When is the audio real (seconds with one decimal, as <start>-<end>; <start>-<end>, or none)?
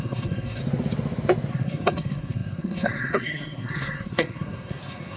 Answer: 0.6-1.5